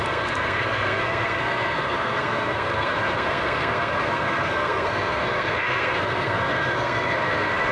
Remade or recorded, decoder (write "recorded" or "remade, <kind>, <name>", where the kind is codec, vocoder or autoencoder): remade, codec, SNAC